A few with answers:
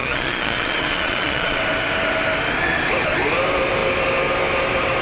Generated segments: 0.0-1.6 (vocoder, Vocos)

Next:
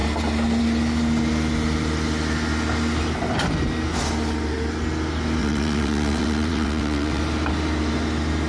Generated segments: 5.4-7.2 (vocoder, WaveNeXt)

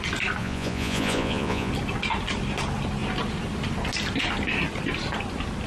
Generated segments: 0.4-1.7 (vocoder, Vocos)

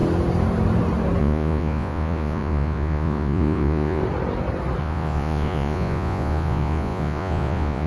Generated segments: 1.2-4.0 (vocoder, Vocos); 4.8-7.9